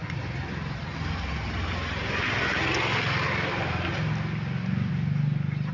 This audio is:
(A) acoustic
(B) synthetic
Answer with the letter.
A